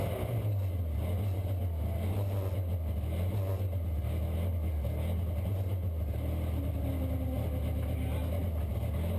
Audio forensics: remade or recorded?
recorded